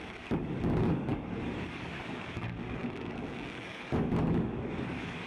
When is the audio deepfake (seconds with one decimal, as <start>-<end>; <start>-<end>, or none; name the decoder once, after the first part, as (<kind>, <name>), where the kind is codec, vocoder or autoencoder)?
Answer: 0.0-5.3 (codec, DAC)